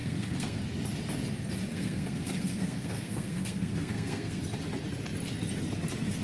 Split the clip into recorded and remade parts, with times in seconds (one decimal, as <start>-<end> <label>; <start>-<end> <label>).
0.0-0.6 remade; 0.6-1.7 recorded; 1.7-4.4 remade; 4.4-6.2 recorded